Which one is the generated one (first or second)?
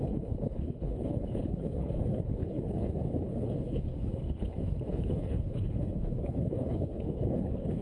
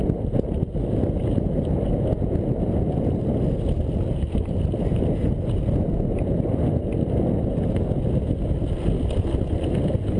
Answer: first